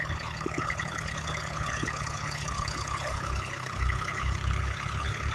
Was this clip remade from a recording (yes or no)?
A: yes